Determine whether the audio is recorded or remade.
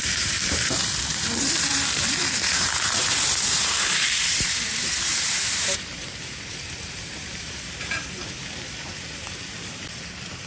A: remade